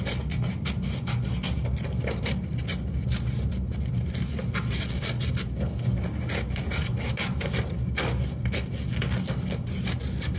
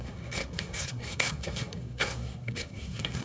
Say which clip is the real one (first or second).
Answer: first